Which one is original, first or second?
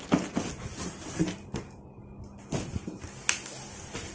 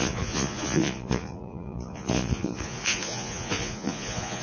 first